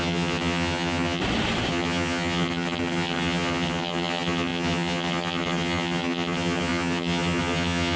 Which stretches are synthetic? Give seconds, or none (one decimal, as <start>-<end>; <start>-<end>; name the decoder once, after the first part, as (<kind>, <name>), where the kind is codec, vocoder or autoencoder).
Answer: 0.0-1.2 (vocoder, HiFi-GAN); 1.7-8.0